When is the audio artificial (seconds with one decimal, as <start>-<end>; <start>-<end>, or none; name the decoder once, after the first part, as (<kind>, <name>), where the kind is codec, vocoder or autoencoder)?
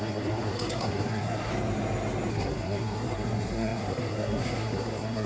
0.0-1.5 (codec, SNAC); 2.3-5.3